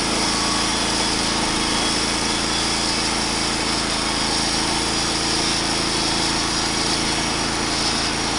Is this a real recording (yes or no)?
yes